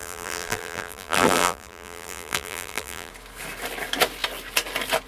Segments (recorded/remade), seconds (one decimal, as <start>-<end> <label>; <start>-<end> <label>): 0.0-3.1 remade; 3.1-5.1 recorded